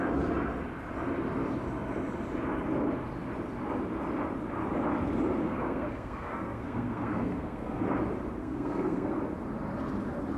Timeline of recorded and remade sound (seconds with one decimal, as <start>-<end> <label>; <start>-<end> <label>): 0.0-5.4 recorded; 5.4-7.8 remade; 7.8-8.4 recorded; 8.4-9.1 remade; 9.1-10.4 recorded